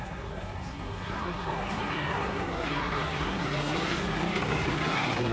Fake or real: fake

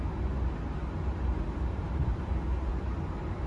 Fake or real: real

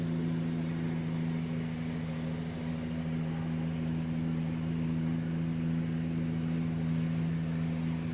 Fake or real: real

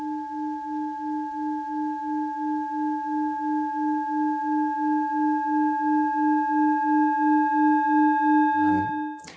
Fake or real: real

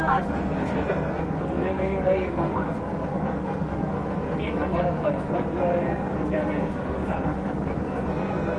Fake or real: fake